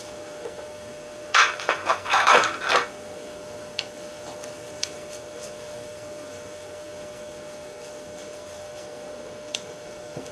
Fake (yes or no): yes